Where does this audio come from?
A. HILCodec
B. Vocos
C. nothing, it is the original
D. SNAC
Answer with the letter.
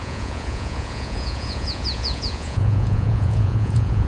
B